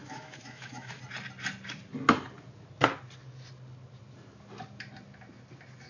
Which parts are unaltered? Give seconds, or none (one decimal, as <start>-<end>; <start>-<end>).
1.0-5.9